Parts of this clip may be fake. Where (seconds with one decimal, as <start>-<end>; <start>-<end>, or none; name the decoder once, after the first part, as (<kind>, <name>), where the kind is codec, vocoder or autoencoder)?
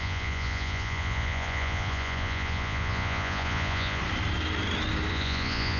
0.0-4.0 (vocoder, Vocos); 5.1-5.8